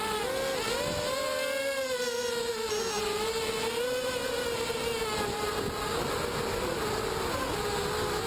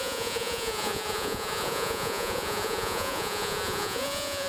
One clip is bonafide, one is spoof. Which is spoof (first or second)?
second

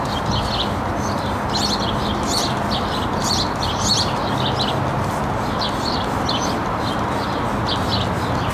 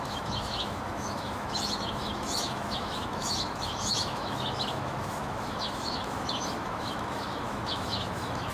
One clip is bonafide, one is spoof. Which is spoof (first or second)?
second